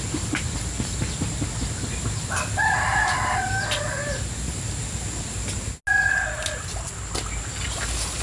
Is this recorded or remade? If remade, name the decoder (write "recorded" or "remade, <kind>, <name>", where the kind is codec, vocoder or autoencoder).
recorded